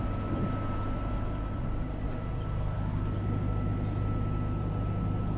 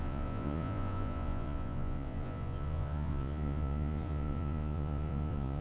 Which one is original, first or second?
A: first